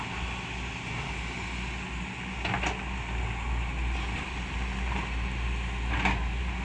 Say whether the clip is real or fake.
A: real